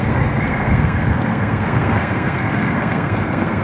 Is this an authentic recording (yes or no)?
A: no